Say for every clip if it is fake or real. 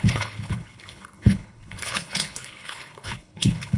fake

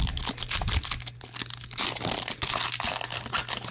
real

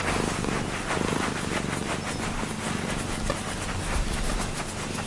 real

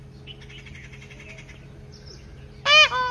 real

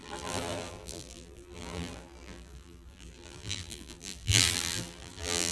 fake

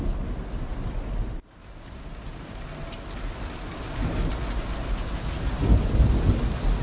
real